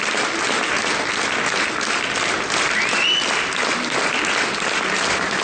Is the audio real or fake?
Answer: real